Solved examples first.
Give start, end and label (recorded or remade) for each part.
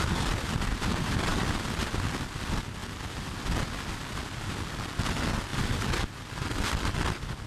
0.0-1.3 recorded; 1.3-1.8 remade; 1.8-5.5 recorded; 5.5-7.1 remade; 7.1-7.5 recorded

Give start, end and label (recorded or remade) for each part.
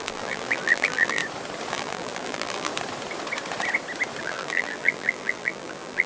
0.0-1.2 remade; 1.2-1.7 recorded; 1.7-2.7 remade; 2.7-4.2 recorded; 4.2-6.1 remade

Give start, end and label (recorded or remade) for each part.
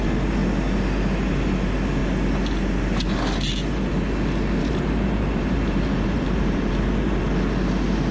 0.0-4.6 recorded; 4.6-7.2 remade; 7.2-8.1 recorded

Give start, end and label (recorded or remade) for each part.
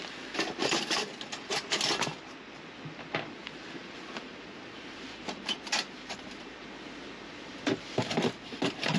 0.0-0.6 remade; 0.6-3.8 recorded; 3.8-6.6 remade; 6.6-7.5 recorded; 7.5-9.0 remade